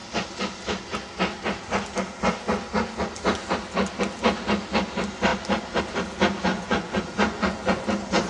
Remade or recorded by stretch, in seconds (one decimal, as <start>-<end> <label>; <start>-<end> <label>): 0.0-6.5 recorded; 6.5-7.8 remade; 7.8-8.3 recorded

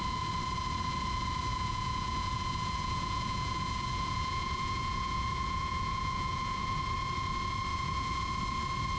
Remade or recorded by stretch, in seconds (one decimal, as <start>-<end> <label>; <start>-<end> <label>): 0.0-1.5 recorded; 1.5-6.8 remade; 6.8-7.7 recorded; 7.7-8.2 remade; 8.2-9.0 recorded

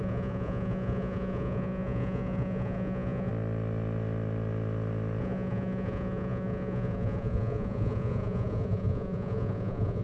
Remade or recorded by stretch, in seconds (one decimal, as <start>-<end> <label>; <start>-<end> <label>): 0.0-3.3 remade; 3.3-5.2 recorded; 5.2-10.0 remade